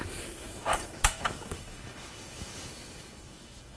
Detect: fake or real fake